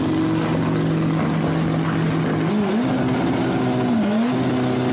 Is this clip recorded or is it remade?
recorded